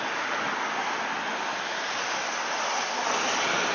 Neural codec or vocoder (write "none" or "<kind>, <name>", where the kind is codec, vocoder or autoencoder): none